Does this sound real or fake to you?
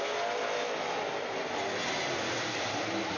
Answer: real